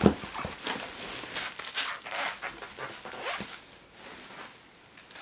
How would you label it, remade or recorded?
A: recorded